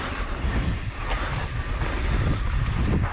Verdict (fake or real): real